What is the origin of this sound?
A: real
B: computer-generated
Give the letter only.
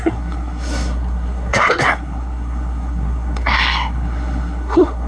B